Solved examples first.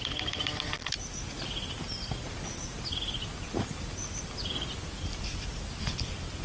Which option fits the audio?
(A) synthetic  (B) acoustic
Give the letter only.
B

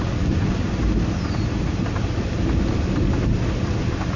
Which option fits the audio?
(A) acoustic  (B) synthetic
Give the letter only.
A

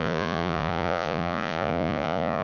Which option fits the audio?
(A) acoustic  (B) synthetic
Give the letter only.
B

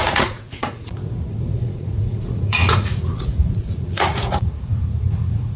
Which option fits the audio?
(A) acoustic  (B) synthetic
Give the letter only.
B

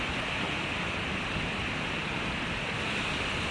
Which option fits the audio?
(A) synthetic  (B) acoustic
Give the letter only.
B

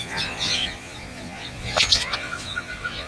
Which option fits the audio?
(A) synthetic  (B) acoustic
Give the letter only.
A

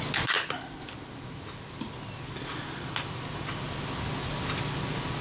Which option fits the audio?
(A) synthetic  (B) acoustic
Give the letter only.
B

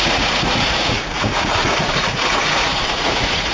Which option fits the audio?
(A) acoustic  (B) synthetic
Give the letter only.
B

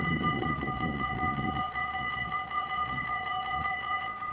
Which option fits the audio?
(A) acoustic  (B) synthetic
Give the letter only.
B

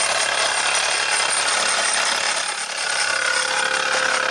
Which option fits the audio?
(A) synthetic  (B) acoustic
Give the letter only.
B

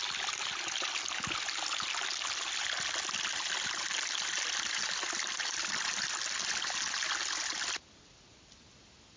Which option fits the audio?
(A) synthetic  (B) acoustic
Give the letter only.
B